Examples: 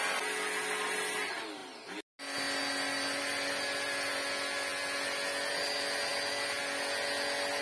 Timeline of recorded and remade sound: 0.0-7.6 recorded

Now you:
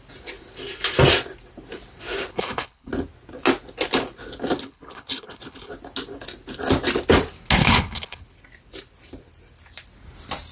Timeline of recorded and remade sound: 0.0-2.3 recorded; 2.3-2.9 remade; 2.9-4.6 recorded; 4.6-5.7 remade; 5.7-7.6 recorded; 7.6-8.2 remade; 8.2-10.5 recorded